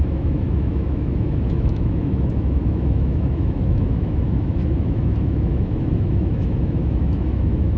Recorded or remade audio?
remade